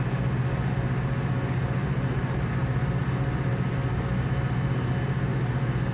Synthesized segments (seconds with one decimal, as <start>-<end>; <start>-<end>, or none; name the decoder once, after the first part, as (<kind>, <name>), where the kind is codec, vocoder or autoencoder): 1.8-3.0 (vocoder, BigVGAN v2)